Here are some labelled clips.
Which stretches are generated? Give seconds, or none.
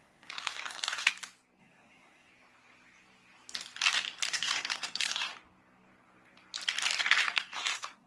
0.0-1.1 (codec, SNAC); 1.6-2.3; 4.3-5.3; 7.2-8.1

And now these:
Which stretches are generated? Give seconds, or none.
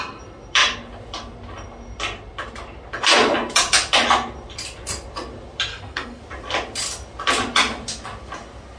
5.7-6.2 (codec, SNAC)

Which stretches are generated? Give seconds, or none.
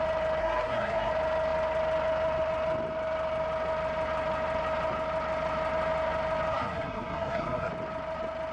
0.4-1.1 (codec, SNAC); 6.5-7.7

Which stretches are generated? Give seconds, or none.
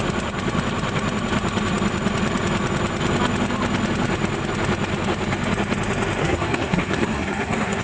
6.2-7.8 (codec, SNAC)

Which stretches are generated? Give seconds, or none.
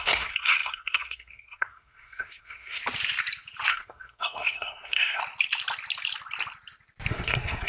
0.0-2.8 (codec, SNAC); 3.7-5.2; 7.1-7.7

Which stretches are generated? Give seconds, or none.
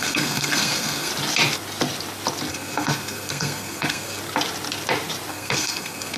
0.0-1.1 (codec, SNAC); 2.5-4.2; 5.3-6.2